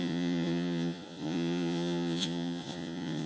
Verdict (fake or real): fake